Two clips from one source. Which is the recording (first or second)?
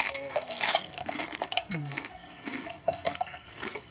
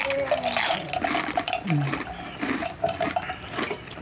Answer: second